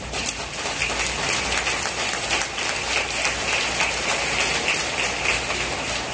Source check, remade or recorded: recorded